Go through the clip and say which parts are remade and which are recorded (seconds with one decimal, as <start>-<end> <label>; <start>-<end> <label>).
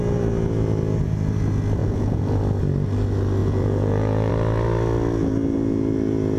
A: 0.0-1.8 recorded; 1.8-2.4 remade; 2.4-3.4 recorded; 3.4-4.3 remade; 4.3-6.4 recorded